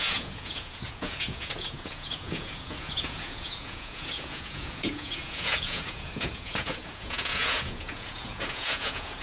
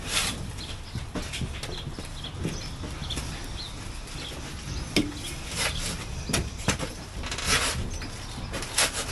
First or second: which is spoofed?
first